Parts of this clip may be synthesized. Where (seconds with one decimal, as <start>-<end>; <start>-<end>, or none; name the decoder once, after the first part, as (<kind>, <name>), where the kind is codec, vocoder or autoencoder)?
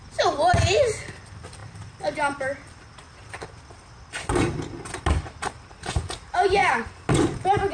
none